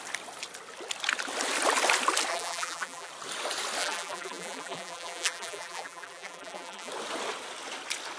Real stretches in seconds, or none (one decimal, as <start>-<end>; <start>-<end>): 0.0-2.3; 3.1-3.8; 6.9-8.2